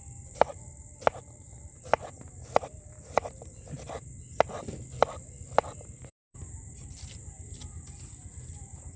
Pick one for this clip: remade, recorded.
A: recorded